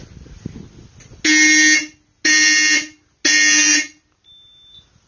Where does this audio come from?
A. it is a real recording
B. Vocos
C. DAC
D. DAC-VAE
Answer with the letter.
A